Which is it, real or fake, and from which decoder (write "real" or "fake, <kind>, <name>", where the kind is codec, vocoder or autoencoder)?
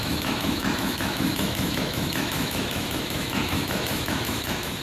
fake, autoencoder, DAC-VAE